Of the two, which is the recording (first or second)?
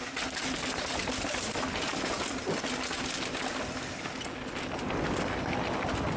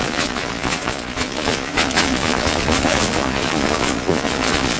first